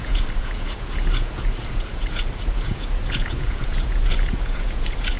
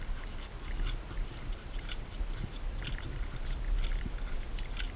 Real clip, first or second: second